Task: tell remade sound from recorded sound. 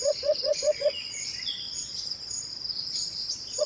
remade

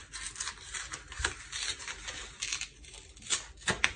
recorded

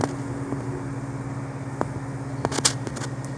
recorded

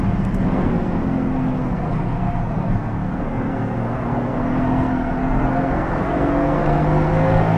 remade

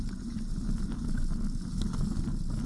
recorded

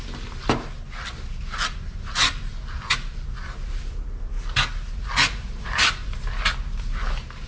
recorded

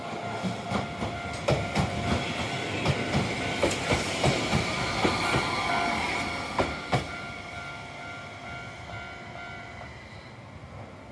recorded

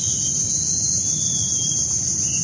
remade